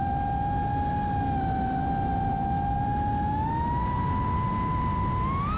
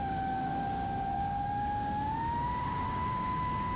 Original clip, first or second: first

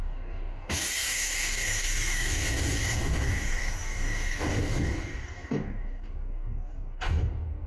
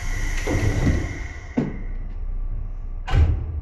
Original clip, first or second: second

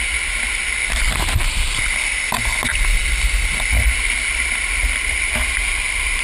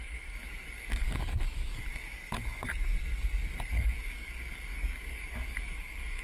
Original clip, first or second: first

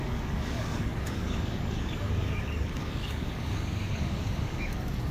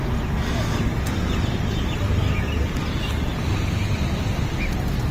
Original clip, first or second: second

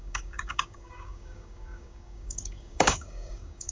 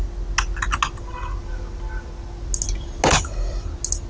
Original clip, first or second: second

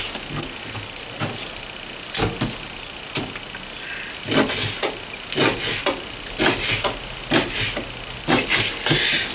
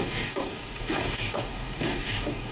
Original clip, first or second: first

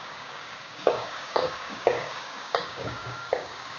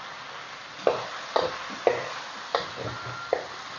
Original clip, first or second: second